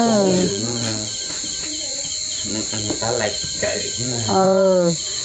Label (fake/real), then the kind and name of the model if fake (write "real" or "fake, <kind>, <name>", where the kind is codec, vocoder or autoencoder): fake, vocoder, Vocos